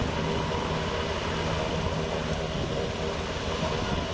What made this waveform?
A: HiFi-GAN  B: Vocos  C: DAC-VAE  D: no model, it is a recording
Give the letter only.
D